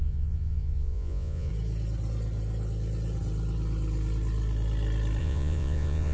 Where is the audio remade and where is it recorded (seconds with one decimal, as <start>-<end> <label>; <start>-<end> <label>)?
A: 0.0-1.5 remade; 1.5-5.2 recorded; 5.2-6.1 remade